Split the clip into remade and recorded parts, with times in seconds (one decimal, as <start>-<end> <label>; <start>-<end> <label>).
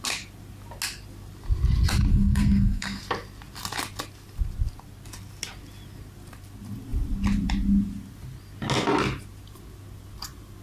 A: 0.0-2.1 recorded; 2.1-3.0 remade; 3.0-10.6 recorded